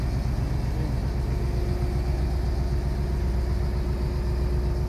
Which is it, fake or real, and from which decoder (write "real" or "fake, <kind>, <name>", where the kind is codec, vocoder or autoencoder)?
real